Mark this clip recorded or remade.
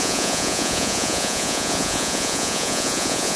remade